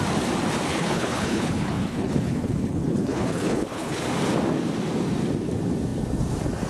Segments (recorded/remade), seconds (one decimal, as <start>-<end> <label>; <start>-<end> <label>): 0.0-0.7 recorded; 0.7-4.0 remade; 4.0-6.7 recorded

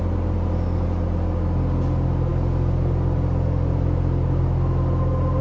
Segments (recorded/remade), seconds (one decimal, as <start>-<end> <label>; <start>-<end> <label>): 0.0-5.4 recorded

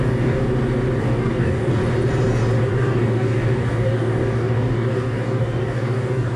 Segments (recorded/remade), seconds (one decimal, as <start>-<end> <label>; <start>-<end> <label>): 0.0-0.4 remade; 0.4-1.0 recorded; 1.0-1.8 remade; 1.8-2.7 recorded; 2.7-6.4 remade

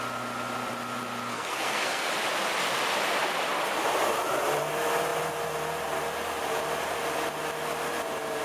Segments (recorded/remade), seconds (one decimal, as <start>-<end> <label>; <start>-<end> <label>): 0.0-1.3 recorded; 1.3-2.1 remade; 2.1-8.4 recorded

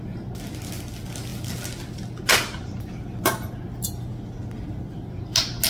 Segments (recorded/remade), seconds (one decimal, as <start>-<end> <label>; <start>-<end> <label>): 0.0-5.7 recorded

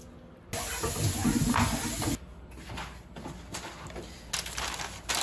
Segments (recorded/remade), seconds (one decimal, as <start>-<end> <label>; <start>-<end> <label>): 0.0-5.2 recorded